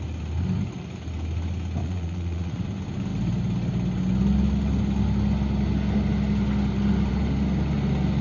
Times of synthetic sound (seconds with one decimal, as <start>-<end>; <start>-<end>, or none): 1.8-2.6